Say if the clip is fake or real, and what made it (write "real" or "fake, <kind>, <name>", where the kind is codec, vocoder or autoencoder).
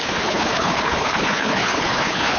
fake, codec, HILCodec